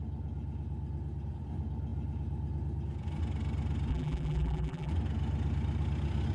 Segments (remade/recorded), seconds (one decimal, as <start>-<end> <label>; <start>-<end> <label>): 0.0-3.9 recorded; 3.9-4.9 remade; 4.9-6.3 recorded